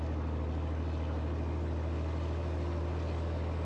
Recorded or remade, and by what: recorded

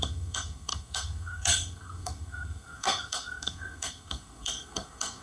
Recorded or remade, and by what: remade, codec, SNAC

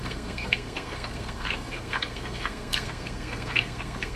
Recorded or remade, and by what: remade, codec, SNAC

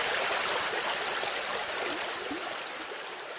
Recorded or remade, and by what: recorded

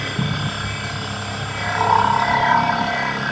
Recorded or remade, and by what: recorded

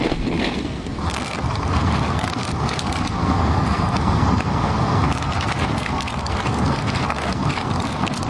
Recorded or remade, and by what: remade, codec, SNAC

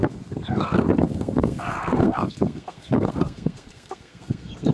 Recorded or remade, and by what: remade, codec, SNAC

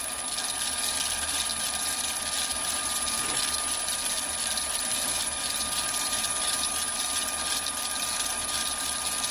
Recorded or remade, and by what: recorded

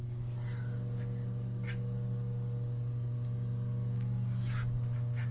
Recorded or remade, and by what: recorded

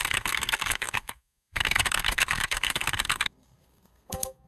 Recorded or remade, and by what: remade, codec, SNAC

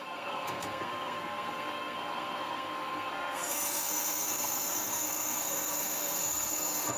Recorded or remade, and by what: remade, codec, SNAC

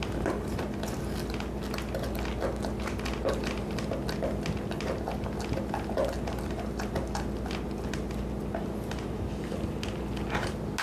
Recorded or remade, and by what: recorded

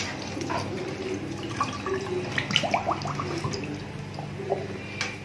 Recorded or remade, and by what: recorded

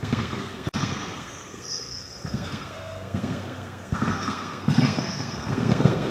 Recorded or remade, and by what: remade, codec, SNAC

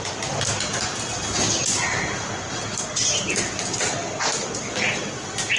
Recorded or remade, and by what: recorded